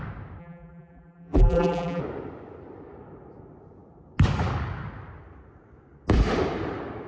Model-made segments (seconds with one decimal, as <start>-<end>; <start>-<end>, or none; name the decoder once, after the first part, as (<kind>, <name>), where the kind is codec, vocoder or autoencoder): 0.4-2.0 (vocoder, BigVGAN v2)